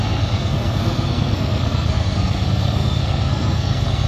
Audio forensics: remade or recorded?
remade